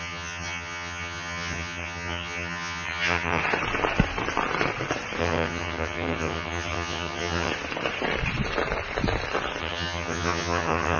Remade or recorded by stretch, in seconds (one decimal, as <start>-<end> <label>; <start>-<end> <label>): 0.0-3.4 remade; 3.4-5.2 recorded; 5.2-7.5 remade; 7.5-9.6 recorded; 9.6-11.0 remade